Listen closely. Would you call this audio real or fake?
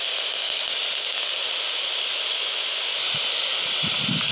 real